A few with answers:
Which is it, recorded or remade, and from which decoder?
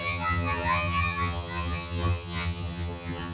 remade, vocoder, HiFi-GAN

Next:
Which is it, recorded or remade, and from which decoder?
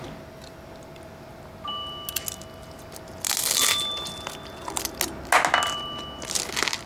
recorded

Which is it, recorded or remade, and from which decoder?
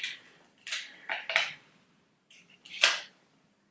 recorded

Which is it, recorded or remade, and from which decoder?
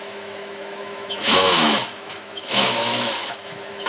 remade, autoencoder, DAC-VAE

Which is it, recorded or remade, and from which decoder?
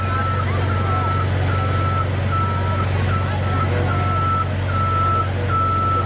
recorded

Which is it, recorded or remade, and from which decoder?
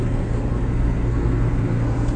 remade, codec, SNAC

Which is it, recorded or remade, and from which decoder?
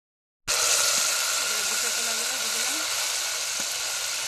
recorded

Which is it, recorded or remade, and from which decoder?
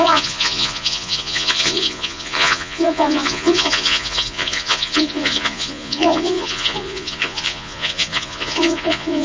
remade, vocoder, Vocos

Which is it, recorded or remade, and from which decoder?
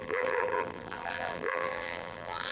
remade, vocoder, BigVGAN v2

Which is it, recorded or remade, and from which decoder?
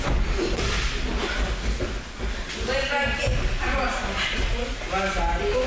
recorded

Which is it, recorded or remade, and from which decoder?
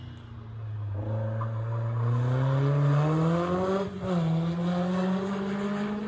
recorded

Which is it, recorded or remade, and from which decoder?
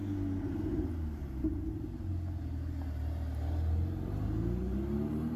recorded